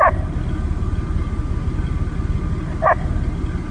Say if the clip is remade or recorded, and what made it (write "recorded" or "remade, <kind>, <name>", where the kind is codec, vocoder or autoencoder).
recorded